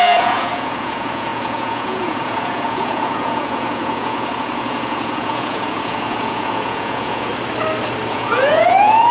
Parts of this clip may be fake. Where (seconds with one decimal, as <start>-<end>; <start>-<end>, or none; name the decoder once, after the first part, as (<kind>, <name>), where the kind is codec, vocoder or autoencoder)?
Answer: 0.0-7.3 (vocoder, Vocos); 8.1-9.1